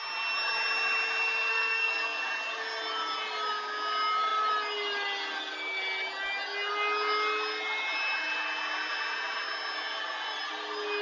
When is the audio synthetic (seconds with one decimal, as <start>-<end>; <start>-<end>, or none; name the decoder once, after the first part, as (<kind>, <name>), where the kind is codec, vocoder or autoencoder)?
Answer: 1.5-2.2 (codec, SNAC)